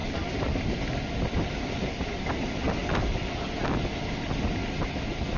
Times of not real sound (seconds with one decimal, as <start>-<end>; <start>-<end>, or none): none